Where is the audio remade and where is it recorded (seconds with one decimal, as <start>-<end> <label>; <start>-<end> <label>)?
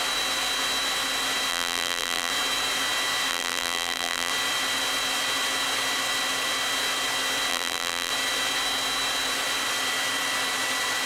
0.0-1.5 recorded; 1.5-2.3 remade; 2.3-3.3 recorded; 3.3-4.3 remade; 4.3-7.5 recorded; 7.5-8.1 remade; 8.1-11.1 recorded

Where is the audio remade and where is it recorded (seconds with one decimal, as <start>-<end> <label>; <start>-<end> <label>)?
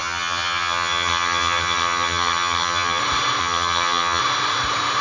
0.0-3.0 remade; 3.0-3.4 recorded; 3.4-4.2 remade; 4.2-5.0 recorded